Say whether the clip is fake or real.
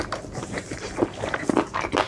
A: real